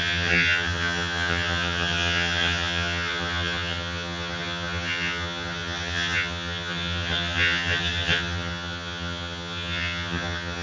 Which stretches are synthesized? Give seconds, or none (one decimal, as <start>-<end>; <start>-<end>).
0.0-10.6